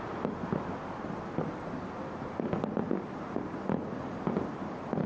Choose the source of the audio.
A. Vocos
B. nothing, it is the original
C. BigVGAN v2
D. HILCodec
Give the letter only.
B